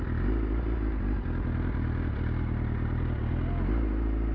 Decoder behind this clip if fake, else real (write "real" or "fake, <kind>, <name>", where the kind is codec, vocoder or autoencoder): real